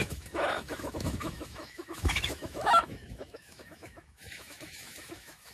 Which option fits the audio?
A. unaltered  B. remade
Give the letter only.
B